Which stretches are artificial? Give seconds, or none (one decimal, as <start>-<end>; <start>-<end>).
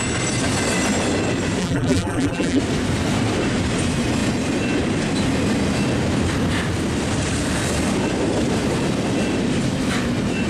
1.6-2.6